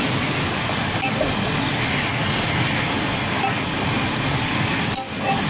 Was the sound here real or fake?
real